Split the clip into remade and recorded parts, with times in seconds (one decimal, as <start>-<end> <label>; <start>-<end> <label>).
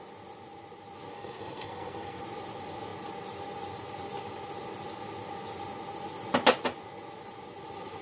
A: 0.0-1.1 recorded; 1.1-2.2 remade; 2.2-8.0 recorded